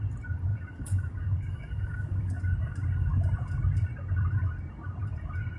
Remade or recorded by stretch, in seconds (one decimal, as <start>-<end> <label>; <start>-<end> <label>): 0.0-0.5 recorded; 0.5-2.4 remade; 2.4-5.6 recorded